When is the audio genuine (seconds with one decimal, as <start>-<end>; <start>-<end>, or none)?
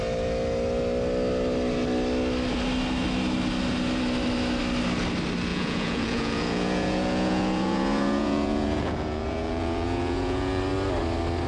0.0-5.5; 10.6-11.5